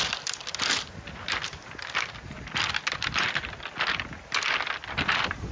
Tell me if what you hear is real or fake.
real